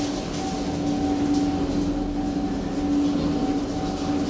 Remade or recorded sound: recorded